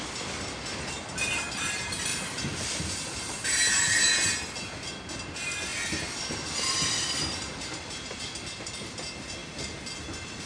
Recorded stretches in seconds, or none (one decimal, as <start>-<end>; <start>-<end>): 0.0-2.1; 2.8-5.7; 8.3-10.5